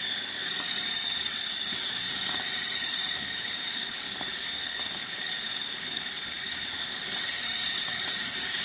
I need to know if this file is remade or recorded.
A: remade